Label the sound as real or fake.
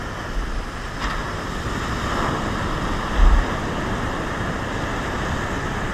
real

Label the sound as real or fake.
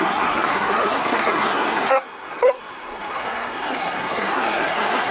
fake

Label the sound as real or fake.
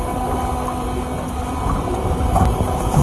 real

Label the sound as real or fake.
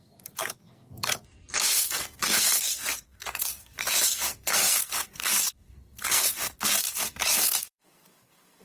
fake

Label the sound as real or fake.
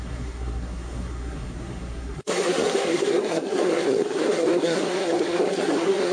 fake